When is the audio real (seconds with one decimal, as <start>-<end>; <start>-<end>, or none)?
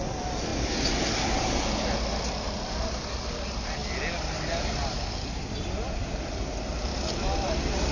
0.0-0.5; 1.7-7.9